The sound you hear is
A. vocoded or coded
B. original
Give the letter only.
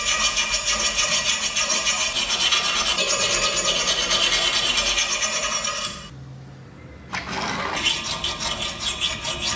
B